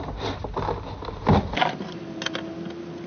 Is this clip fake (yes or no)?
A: no